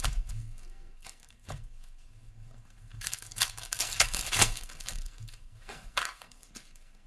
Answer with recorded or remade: remade